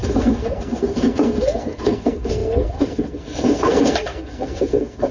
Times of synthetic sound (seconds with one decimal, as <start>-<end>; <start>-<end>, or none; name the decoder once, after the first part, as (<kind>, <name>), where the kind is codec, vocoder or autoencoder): 0.0-5.1 (codec, SNAC)